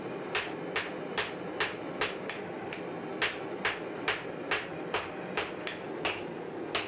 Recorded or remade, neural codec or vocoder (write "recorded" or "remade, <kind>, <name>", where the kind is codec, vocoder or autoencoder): recorded